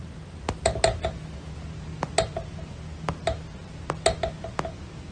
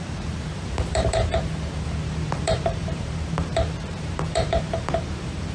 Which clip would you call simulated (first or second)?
second